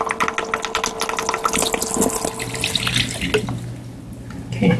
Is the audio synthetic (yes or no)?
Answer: no